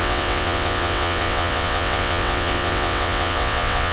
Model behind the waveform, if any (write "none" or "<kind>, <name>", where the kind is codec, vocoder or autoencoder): vocoder, WaveNeXt